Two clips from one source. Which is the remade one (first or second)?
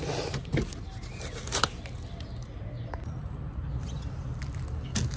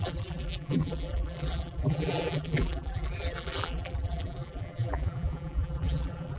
second